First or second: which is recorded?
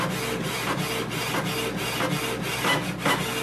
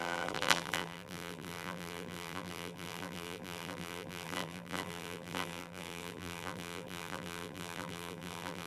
first